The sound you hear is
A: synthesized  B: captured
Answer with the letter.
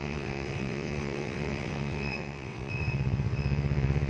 A